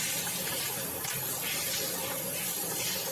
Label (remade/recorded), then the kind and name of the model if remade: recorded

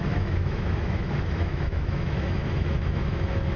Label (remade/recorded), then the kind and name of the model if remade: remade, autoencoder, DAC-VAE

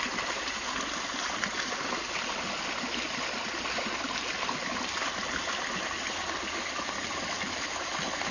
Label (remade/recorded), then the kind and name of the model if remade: recorded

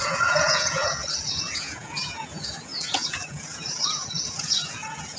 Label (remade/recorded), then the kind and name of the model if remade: remade, vocoder, Vocos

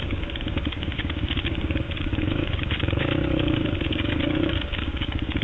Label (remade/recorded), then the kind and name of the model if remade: remade, codec, DAC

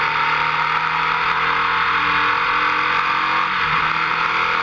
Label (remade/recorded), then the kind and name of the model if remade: recorded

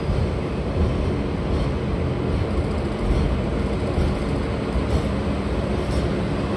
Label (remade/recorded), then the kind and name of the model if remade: recorded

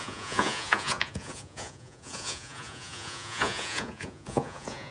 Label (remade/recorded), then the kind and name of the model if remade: remade, vocoder, Vocos